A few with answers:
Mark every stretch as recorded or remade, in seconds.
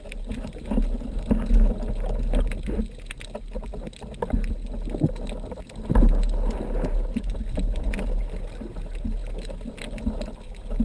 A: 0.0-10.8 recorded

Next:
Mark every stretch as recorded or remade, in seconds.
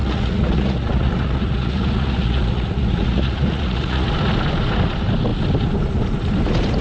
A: 0.0-4.1 remade; 4.1-6.8 recorded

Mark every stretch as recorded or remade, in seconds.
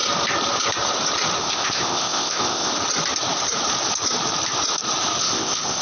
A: 0.0-1.4 recorded; 1.4-2.7 remade; 2.7-5.2 recorded; 5.2-5.8 remade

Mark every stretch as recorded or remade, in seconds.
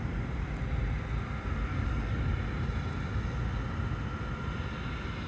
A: 0.0-1.7 recorded; 1.7-2.2 remade; 2.2-5.3 recorded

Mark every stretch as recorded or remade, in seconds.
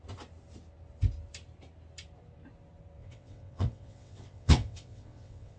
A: 0.0-3.0 recorded; 3.0-5.6 remade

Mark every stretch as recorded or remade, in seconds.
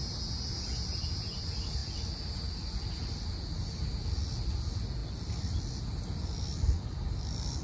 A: 0.0-7.6 recorded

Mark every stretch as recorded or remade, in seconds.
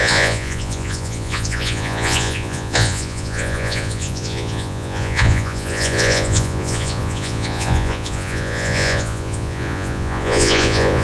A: 0.0-11.0 remade